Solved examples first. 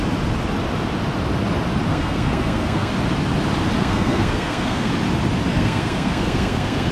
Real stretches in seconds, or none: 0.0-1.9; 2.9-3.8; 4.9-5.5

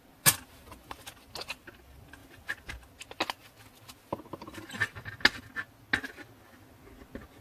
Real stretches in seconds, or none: 0.0-7.4

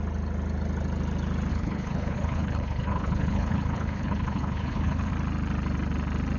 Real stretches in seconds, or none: 0.0-1.5; 5.1-6.4

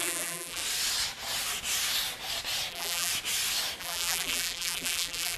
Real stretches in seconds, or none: 0.6-2.7; 3.1-3.8

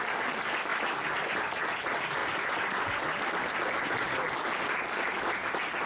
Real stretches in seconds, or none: 0.0-5.9

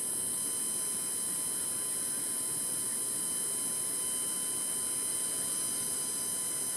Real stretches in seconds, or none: 0.0-5.1; 6.3-6.8

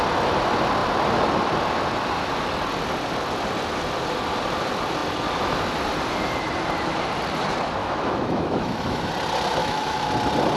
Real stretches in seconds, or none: 0.0-7.8; 9.1-9.6; 10.1-10.6